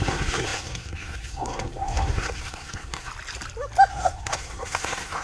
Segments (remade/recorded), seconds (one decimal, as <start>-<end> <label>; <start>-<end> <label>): 0.0-3.1 remade; 3.1-3.9 recorded; 3.9-5.2 remade

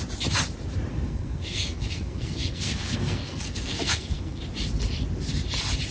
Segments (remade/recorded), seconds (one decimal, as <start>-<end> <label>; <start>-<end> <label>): 0.0-0.9 recorded; 0.9-4.4 remade; 4.4-5.9 recorded

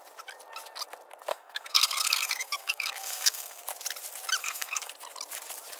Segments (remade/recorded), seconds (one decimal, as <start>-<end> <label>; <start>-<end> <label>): 0.0-1.3 recorded; 1.3-3.6 remade; 3.6-4.4 recorded; 4.4-4.9 remade; 4.9-5.8 recorded